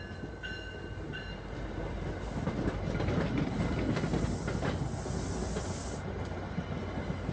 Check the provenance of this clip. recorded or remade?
recorded